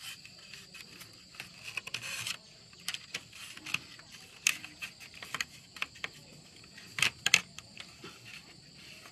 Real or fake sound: real